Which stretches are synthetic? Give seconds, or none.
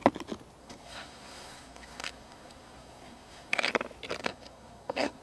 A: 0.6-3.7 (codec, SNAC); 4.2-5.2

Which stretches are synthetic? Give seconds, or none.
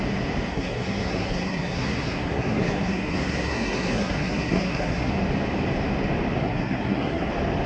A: 0.5-5.1 (codec, SNAC); 6.4-7.3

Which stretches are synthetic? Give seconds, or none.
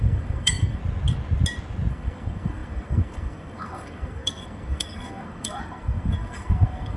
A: 0.0-0.8 (codec, SNAC); 1.9-7.0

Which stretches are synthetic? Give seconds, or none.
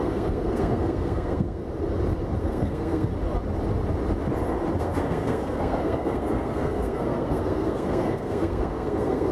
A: 0.0-1.6 (codec, SNAC); 2.4-3.1; 4.8-9.3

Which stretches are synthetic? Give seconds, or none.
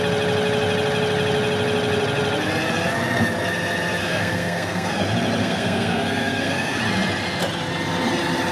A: 4.0-5.0 (codec, SNAC); 5.4-6.8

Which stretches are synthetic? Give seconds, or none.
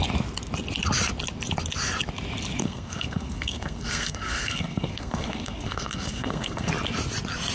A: 2.6-6.7 (codec, SNAC)